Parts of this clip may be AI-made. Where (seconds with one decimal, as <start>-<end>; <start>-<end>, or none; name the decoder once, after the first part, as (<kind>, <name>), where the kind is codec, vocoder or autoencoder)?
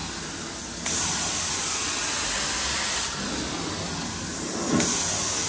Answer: none